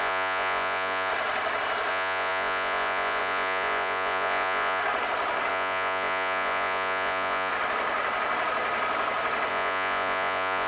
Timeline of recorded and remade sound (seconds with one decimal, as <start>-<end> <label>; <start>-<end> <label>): 0.0-1.1 remade; 1.1-1.9 recorded; 1.9-4.8 remade; 4.8-5.5 recorded; 5.5-7.5 remade; 7.5-9.5 recorded; 9.5-10.7 remade